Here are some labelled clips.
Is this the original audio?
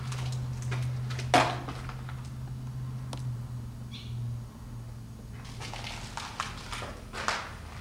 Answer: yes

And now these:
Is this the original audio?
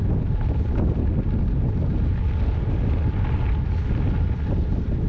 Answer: yes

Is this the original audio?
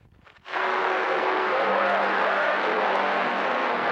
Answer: no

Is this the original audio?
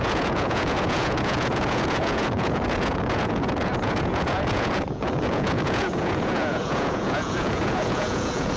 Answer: no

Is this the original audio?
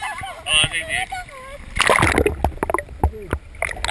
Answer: yes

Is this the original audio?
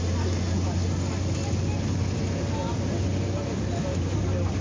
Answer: yes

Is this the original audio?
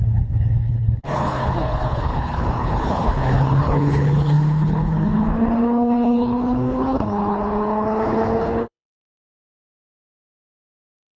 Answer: no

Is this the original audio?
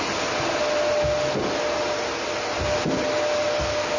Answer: yes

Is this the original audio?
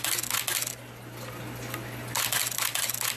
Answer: yes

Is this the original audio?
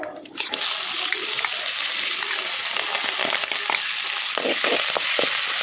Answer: yes